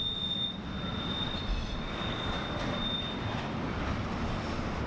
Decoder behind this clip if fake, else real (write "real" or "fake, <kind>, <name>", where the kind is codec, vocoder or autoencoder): real